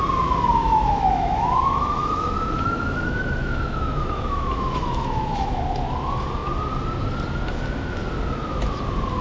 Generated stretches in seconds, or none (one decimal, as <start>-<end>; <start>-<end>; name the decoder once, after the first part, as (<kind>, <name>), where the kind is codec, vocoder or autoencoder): 0.6-5.6 (autoencoder, DAC-VAE)